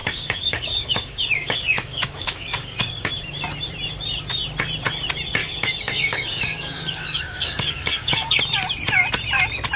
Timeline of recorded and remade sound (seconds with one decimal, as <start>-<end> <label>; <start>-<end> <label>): 0.0-3.1 remade; 3.1-5.4 recorded; 5.4-8.4 remade; 8.4-9.8 recorded